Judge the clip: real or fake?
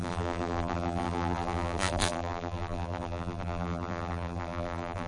fake